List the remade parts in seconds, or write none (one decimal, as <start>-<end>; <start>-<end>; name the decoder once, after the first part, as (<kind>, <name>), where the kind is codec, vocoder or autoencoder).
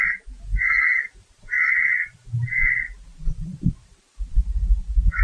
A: none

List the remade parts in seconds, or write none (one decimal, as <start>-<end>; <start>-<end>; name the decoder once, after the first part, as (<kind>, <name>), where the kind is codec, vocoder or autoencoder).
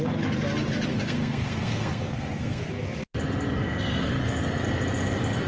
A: 0.9-2.6 (codec, SNAC); 3.6-4.2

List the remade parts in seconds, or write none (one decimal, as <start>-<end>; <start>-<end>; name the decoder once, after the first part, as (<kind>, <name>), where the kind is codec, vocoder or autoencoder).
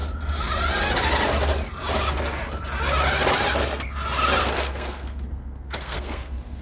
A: 4.4-6.6 (codec, SNAC)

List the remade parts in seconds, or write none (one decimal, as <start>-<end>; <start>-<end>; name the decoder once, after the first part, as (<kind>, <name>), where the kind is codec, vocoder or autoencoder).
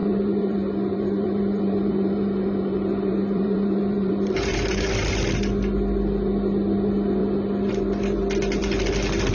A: 0.0-4.9 (vocoder, BigVGAN v2)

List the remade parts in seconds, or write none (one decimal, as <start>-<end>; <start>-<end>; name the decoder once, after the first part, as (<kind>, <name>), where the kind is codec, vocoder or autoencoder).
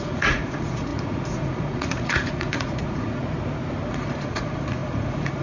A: 0.0-3.2 (vocoder, Vocos); 3.9-5.4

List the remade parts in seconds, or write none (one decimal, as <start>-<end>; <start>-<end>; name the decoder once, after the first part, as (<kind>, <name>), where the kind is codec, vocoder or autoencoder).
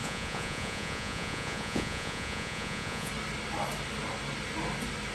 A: 0.0-3.1 (vocoder, Vocos)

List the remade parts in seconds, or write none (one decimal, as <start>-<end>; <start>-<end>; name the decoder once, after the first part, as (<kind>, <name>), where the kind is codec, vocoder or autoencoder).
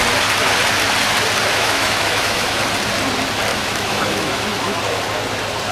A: 1.5-2.6 (autoencoder, DAC-VAE); 3.5-4.8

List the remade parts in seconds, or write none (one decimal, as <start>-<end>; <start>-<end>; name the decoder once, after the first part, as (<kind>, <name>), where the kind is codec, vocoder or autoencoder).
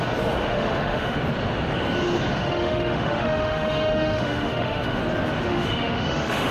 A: 0.4-1.2 (autoencoder, DAC-VAE); 2.3-5.0; 5.5-6.5